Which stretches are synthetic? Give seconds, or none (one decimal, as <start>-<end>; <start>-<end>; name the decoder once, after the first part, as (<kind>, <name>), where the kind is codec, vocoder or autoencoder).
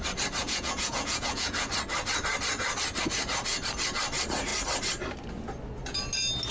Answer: 0.4-1.7 (vocoder, Vocos)